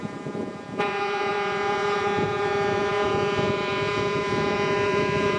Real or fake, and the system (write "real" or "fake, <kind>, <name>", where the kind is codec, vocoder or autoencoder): fake, vocoder, Vocos